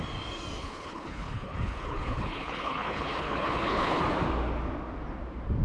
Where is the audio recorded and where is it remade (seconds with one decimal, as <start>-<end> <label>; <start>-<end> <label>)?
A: 0.0-0.6 recorded; 0.6-4.0 remade; 4.0-5.6 recorded